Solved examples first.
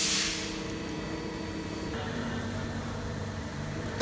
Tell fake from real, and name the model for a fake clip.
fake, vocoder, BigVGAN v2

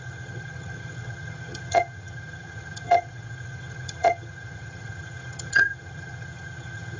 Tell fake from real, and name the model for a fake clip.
fake, vocoder, HiFi-GAN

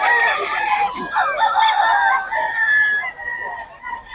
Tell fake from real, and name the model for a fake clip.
real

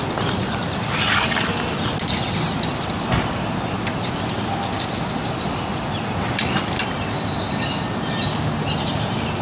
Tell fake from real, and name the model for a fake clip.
real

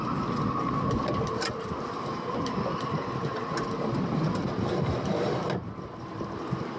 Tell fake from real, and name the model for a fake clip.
real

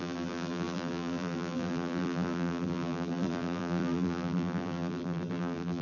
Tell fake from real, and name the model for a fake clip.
fake, vocoder, BigVGAN v2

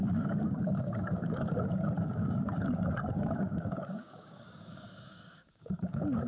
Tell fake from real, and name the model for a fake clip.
fake, codec, DAC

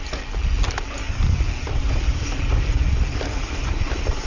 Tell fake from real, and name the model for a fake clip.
real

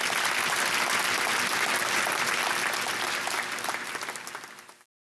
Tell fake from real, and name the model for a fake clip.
real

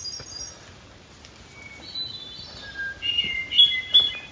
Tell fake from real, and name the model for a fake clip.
real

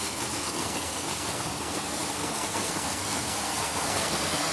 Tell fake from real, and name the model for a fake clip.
fake, codec, SNAC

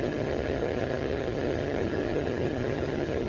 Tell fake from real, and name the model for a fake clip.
fake, vocoder, HiFi-GAN